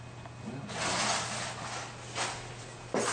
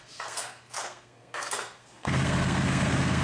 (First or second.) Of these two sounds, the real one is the first